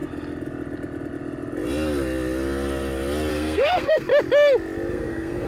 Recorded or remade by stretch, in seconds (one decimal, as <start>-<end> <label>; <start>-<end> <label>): 0.0-3.3 recorded; 3.3-4.1 remade; 4.1-4.9 recorded; 4.9-5.5 remade